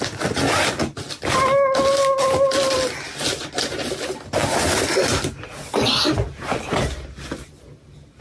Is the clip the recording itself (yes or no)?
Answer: yes